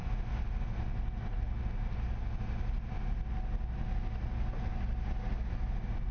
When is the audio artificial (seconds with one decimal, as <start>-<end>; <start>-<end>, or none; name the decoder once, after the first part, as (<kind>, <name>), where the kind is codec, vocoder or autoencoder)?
none